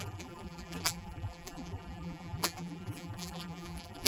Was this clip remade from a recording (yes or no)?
yes